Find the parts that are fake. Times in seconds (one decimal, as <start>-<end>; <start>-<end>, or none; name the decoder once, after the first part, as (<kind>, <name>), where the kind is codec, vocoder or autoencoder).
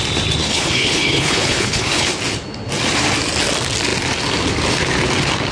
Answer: 0.4-2.1 (codec, HILCodec)